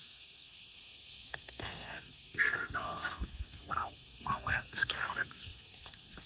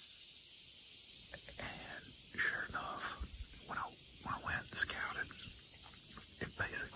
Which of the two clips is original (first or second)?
second